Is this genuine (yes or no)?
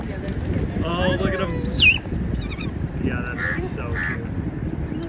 yes